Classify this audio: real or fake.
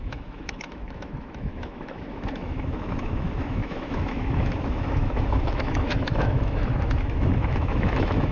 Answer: fake